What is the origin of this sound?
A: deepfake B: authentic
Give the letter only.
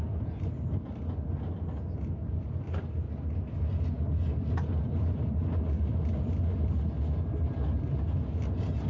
B